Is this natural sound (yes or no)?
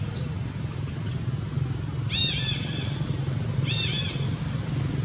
yes